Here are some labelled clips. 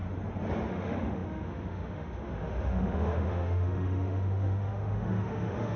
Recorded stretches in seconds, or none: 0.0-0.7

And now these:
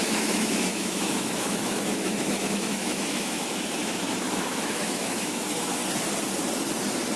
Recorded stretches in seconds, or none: 5.8-7.2

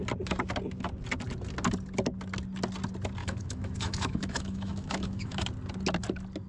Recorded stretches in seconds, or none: 0.0-3.2; 5.4-6.5

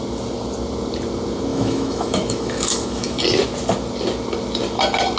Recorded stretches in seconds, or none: 0.0-1.5; 3.2-5.2

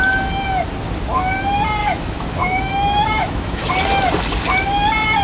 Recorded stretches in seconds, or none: 0.0-1.8; 3.7-5.2

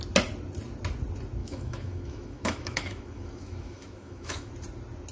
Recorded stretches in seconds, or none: 0.0-1.4; 4.5-5.1